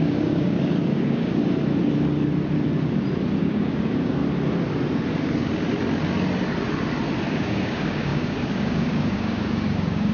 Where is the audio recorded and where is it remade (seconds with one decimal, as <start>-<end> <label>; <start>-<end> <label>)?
0.0-1.4 remade; 1.4-3.4 recorded; 3.4-4.2 remade; 4.2-7.3 recorded; 7.3-10.1 remade